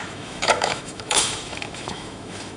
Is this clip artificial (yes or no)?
yes